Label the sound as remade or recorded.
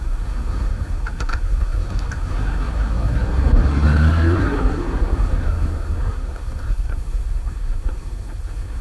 remade